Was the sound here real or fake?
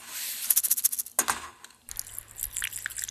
real